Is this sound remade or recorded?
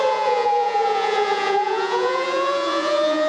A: remade